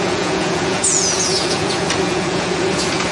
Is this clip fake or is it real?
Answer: fake